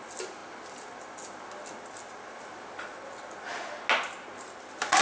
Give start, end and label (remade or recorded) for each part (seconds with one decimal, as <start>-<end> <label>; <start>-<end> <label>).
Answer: 0.0-5.0 recorded